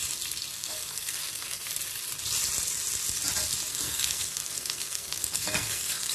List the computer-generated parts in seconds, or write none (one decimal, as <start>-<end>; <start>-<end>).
0.5-1.7; 3.7-6.1